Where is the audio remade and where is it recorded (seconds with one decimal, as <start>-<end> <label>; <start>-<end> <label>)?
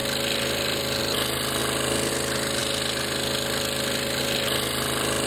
0.0-5.3 recorded